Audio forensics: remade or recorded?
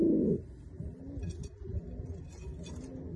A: recorded